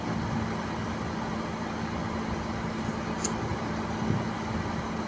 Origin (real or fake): real